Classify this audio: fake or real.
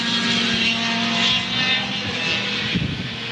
real